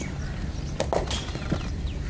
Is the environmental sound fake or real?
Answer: real